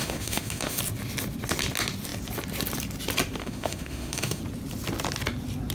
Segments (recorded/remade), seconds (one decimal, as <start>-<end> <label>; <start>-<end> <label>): 0.0-0.8 remade; 0.8-3.4 recorded; 3.4-4.4 remade; 4.4-5.7 recorded